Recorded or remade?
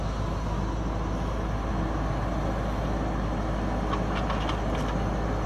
recorded